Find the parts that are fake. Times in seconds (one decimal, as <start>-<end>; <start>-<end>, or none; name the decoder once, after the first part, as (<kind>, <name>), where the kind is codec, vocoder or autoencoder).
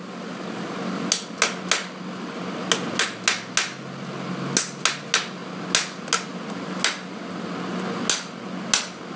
none